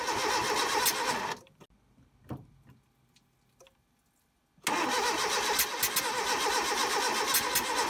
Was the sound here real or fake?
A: real